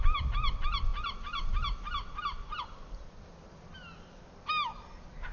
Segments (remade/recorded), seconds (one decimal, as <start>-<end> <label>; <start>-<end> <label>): 0.0-5.3 recorded